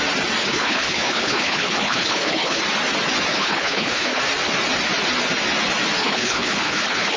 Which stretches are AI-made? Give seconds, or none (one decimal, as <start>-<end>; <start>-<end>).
0.4-2.6; 3.3-4.2; 6.0-7.2